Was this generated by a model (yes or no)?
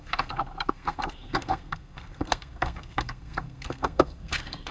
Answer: yes